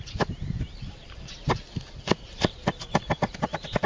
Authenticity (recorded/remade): remade